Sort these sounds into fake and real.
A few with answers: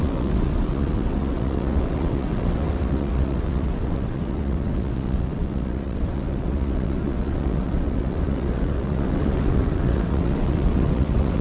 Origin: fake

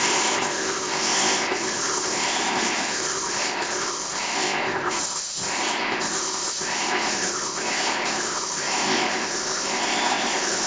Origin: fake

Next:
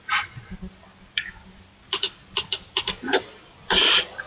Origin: fake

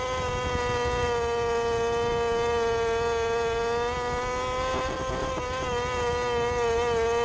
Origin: real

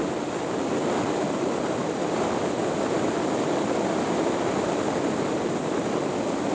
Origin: real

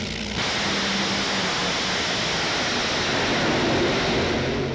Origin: real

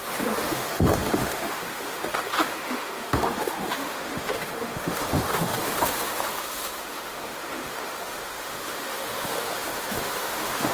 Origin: fake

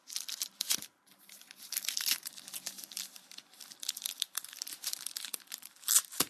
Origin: real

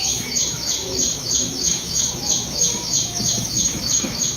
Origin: fake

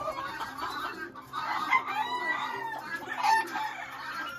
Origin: fake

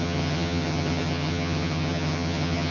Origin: fake